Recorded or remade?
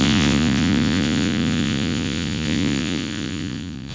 remade